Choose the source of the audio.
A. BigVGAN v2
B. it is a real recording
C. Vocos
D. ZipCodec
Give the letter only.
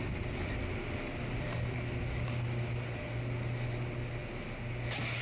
B